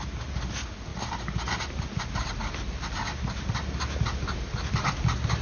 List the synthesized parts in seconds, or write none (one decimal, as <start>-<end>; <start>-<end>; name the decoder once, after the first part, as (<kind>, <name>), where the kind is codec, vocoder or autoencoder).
none